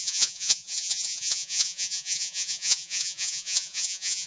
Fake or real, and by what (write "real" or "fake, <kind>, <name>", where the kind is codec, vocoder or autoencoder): fake, vocoder, Vocos